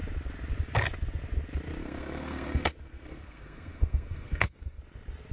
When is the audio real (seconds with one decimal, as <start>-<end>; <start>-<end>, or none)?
0.0-1.8; 4.8-5.3